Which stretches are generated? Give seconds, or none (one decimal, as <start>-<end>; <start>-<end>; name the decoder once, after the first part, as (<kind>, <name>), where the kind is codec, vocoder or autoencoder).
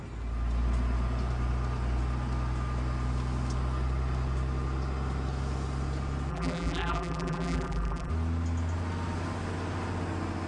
6.3-8.1 (vocoder, BigVGAN v2)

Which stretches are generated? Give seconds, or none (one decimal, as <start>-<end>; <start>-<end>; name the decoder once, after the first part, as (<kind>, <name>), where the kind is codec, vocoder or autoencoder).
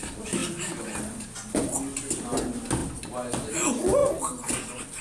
none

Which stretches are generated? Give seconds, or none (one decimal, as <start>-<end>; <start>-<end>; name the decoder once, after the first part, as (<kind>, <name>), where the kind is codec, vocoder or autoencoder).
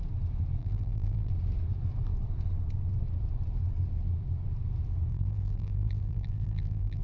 0.6-1.3 (vocoder, BigVGAN v2); 5.1-7.0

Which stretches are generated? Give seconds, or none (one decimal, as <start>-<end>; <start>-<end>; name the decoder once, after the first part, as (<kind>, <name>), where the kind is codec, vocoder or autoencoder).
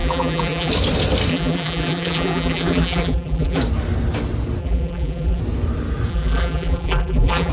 0.0-0.7 (vocoder, BigVGAN v2); 1.3-3.6; 4.6-5.4; 6.1-7.5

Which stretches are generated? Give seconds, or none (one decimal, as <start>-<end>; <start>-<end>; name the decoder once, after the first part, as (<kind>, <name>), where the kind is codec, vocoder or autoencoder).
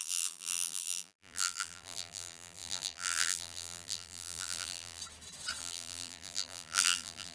0.0-5.0 (vocoder, BigVGAN v2); 5.6-7.3